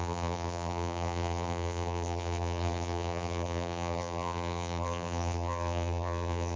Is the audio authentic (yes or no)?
no